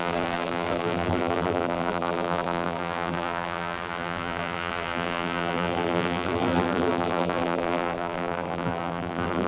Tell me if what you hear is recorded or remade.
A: remade